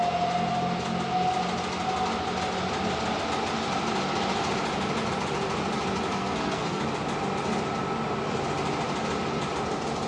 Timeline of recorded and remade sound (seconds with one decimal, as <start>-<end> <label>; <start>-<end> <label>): 0.0-6.1 recorded; 6.1-6.8 remade; 6.8-10.1 recorded